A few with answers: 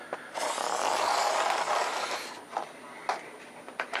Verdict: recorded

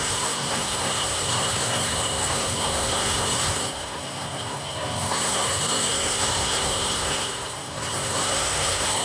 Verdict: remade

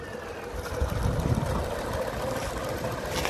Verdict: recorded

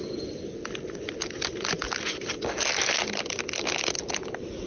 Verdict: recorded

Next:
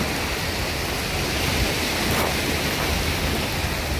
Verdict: recorded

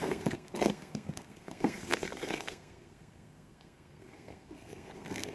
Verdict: remade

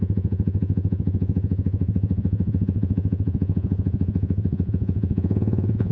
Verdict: remade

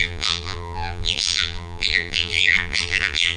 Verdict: remade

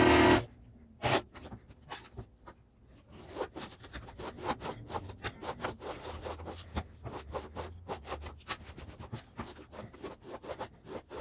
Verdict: recorded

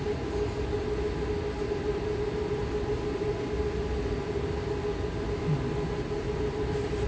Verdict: recorded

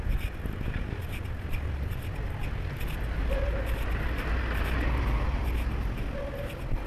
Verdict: recorded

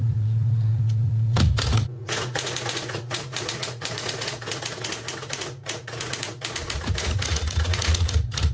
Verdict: remade